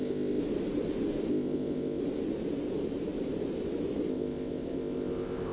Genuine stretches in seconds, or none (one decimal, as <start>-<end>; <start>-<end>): 0.4-1.3; 2.0-4.1